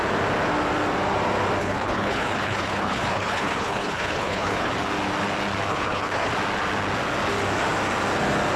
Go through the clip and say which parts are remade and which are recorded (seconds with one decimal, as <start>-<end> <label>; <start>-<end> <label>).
0.0-1.6 recorded; 1.6-4.7 remade; 4.7-5.7 recorded; 5.7-6.3 remade; 6.3-8.6 recorded